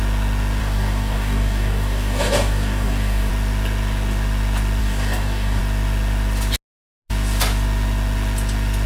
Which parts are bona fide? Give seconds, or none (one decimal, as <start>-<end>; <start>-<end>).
0.0-0.6; 3.3-4.8; 5.6-8.9